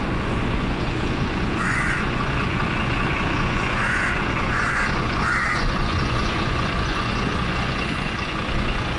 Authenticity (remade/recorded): remade